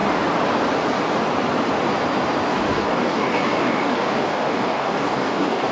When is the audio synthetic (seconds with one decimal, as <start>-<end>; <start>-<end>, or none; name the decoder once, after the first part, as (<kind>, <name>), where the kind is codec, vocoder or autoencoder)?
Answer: 2.5-5.7 (codec, DAC)